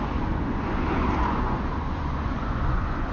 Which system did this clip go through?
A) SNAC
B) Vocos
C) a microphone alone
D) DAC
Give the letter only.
B